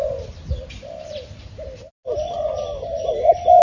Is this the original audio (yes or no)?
yes